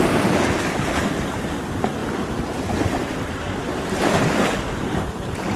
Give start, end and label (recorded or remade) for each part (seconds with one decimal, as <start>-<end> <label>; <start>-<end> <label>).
0.0-5.6 recorded